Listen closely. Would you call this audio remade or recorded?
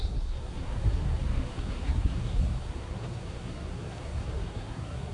remade